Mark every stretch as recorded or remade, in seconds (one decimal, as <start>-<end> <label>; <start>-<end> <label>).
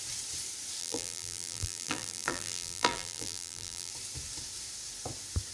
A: 0.0-0.8 recorded; 0.8-3.9 remade; 3.9-5.5 recorded